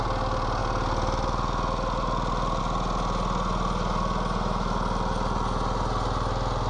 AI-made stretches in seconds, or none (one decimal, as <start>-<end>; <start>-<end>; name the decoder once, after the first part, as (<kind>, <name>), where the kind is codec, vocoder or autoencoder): none